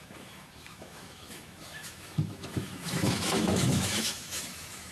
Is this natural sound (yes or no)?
no